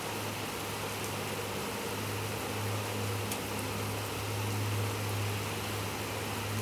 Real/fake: real